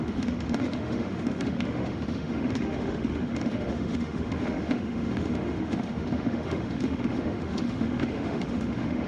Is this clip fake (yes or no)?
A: yes